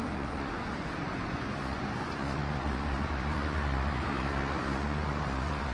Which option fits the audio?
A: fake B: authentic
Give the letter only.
A